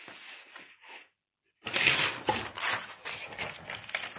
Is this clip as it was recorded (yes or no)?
yes